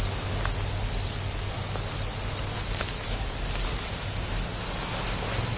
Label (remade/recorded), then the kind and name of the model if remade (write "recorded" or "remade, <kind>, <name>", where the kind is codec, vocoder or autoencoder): recorded